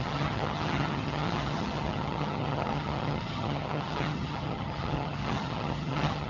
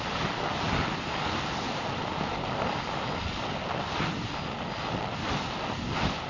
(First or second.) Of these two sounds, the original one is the second